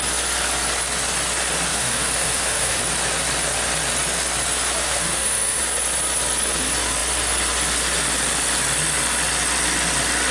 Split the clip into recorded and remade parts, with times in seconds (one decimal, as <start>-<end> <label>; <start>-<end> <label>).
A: 0.0-1.7 recorded; 1.7-2.8 remade; 2.8-4.8 recorded; 4.8-5.6 remade; 5.6-10.3 recorded